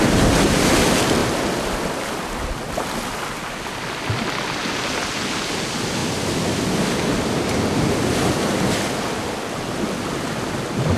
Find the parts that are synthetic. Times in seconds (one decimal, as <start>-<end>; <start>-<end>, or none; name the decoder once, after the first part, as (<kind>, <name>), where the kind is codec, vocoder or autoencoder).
none